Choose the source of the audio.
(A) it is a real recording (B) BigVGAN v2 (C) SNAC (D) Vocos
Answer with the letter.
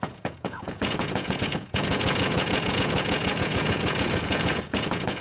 D